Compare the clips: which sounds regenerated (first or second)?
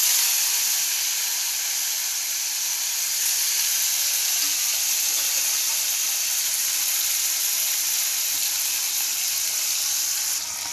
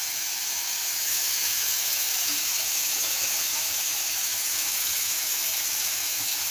second